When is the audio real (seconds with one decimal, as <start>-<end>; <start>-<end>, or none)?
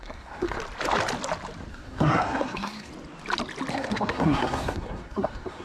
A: 0.6-1.7; 2.9-3.7